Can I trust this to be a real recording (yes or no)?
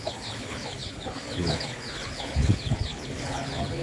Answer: no